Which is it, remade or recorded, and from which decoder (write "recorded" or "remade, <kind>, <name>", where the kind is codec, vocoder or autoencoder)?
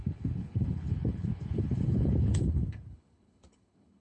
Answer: remade, codec, HILCodec